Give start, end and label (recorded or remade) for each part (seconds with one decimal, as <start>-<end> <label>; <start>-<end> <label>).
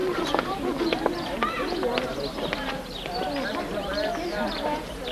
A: 0.0-1.1 remade; 1.1-5.1 recorded